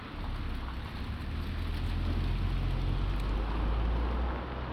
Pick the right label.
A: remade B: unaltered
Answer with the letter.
B